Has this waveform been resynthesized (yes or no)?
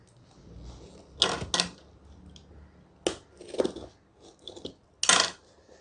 no